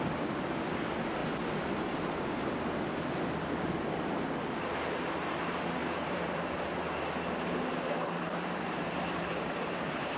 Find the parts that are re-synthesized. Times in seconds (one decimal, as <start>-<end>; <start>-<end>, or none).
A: 1.2-2.5; 5.8-6.7; 7.7-10.2